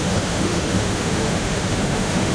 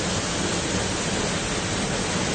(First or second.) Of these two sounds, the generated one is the first